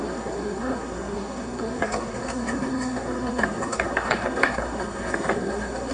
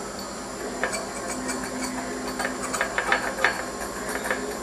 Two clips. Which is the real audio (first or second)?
second